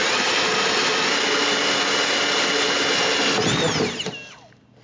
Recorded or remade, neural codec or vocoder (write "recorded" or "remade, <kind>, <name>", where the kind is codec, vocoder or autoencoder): recorded